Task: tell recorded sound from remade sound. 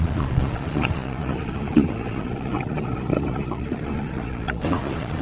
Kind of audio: remade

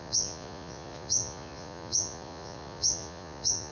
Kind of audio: remade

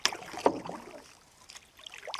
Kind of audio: recorded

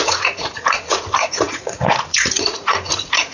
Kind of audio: remade